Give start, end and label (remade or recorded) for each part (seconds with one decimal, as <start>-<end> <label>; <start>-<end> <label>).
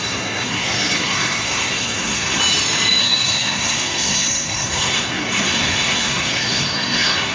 0.0-2.4 remade; 2.4-3.0 recorded; 3.0-7.3 remade